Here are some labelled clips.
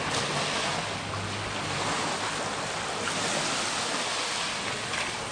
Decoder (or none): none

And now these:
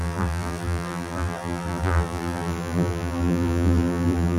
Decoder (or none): vocoder, BigVGAN v2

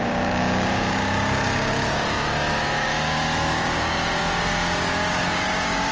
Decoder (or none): codec, DAC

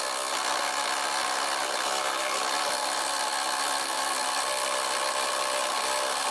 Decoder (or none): none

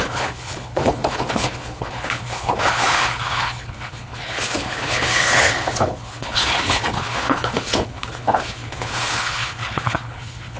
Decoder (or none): codec, HILCodec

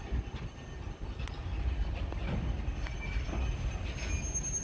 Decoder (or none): none